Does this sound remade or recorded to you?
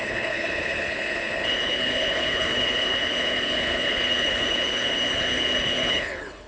remade